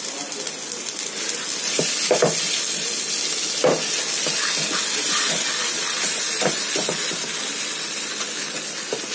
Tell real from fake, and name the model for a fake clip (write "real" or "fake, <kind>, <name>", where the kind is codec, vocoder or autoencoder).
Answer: real